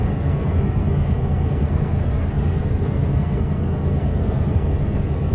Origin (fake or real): fake